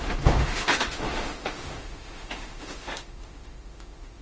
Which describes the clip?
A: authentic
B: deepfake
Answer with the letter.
B